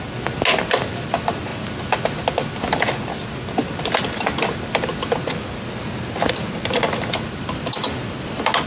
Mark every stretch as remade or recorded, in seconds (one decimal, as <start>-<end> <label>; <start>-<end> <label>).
0.0-8.7 recorded